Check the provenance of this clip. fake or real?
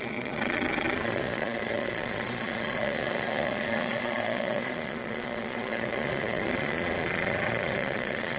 fake